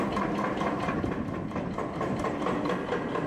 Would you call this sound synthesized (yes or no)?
no